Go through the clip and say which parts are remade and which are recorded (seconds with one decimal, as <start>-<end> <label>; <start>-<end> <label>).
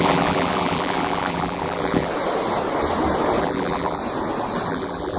0.0-2.1 remade; 2.1-3.4 recorded; 3.4-4.0 remade; 4.0-4.7 recorded; 4.7-5.2 remade